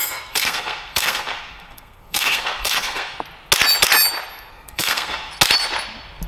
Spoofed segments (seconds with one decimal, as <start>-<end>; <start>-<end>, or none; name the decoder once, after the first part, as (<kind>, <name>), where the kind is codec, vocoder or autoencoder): 0.0-3.2 (codec, SNAC); 4.5-5.3